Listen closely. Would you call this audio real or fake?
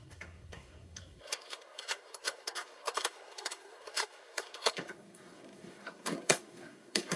fake